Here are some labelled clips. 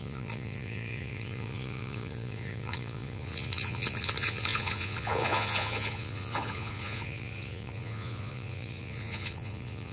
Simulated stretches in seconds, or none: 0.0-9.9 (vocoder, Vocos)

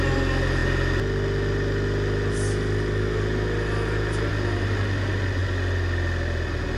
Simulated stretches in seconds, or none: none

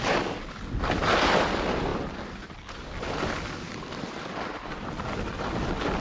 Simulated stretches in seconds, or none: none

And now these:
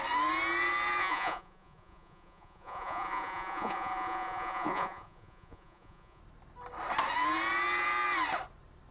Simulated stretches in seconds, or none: 1.0-6.2 (vocoder, Vocos)

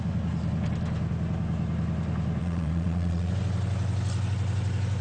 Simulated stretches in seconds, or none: 2.4-3.3 (vocoder, Vocos)

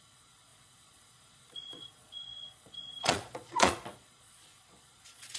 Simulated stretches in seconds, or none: 0.0-5.4 (vocoder, Vocos)

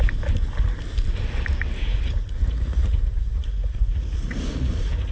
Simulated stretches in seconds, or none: 1.8-5.1 (vocoder, Vocos)